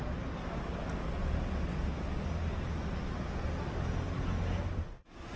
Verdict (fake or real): real